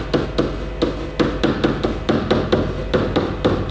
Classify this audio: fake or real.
real